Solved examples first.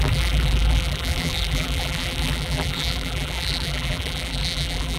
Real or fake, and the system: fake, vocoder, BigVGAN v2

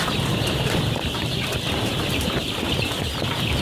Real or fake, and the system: fake, vocoder, BigVGAN v2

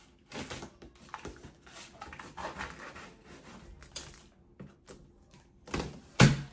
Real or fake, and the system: real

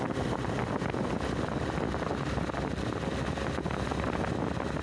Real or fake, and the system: real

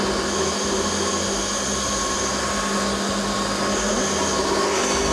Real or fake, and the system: real